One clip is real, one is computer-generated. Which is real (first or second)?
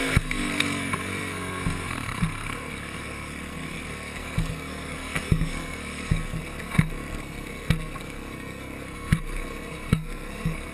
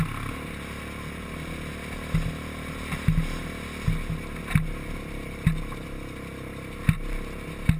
second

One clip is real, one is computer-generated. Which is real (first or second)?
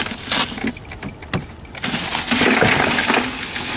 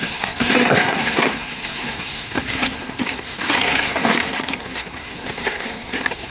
first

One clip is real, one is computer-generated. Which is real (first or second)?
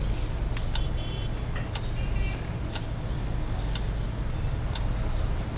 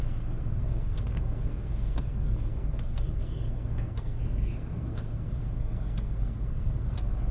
first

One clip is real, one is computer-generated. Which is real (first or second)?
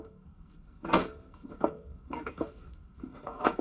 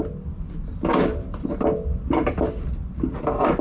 second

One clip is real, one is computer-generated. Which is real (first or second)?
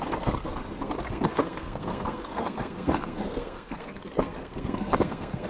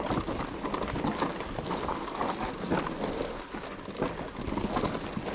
second